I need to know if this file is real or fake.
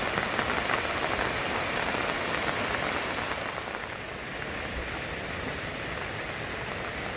real